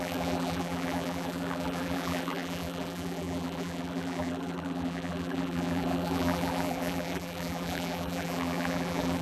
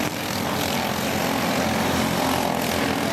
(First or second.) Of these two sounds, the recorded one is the second